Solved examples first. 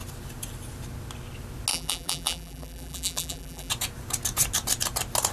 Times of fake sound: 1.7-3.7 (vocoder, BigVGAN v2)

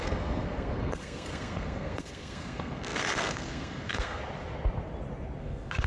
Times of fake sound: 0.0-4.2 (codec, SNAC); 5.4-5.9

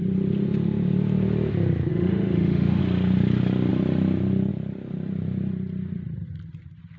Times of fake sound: 1.9-2.8 (autoencoder, DAC-VAE)

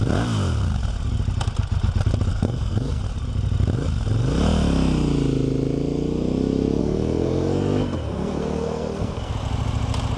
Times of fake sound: 2.3-3.0 (codec, SNAC); 6.8-9.3